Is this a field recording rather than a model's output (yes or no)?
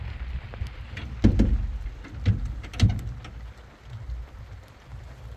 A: yes